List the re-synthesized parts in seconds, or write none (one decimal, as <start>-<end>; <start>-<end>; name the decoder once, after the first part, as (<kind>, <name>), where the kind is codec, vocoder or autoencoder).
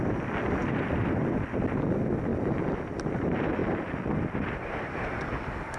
0.6-1.2 (vocoder, BigVGAN v2); 2.3-3.0; 3.6-4.5